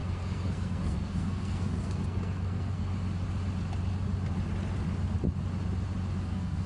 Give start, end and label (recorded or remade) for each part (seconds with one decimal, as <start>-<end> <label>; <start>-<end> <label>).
0.0-2.9 remade; 2.9-6.2 recorded; 6.2-6.7 remade